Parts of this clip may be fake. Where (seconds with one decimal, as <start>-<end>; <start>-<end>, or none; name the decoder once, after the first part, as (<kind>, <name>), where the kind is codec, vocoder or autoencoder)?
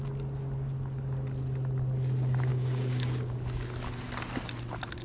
2.5-3.3 (codec, DAC)